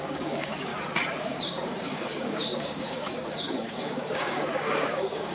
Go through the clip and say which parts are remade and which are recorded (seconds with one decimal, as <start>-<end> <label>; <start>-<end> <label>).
0.0-0.7 remade; 0.7-1.2 recorded; 1.2-5.3 remade